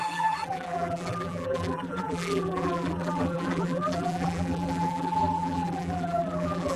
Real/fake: fake